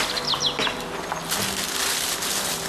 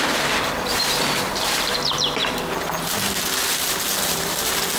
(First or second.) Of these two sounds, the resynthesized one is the second